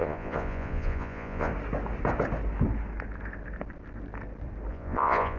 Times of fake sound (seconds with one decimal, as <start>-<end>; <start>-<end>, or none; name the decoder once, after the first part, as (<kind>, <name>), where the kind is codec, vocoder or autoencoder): 0.0-1.5 (vocoder, Vocos); 4.7-5.4